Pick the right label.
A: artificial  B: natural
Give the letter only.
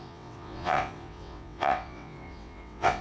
A